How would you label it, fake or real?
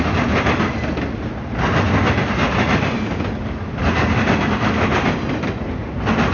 real